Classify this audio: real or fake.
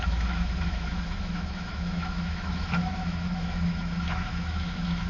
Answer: fake